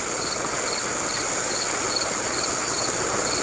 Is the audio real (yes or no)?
yes